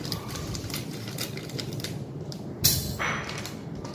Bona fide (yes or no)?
yes